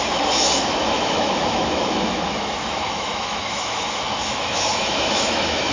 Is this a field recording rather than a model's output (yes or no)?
no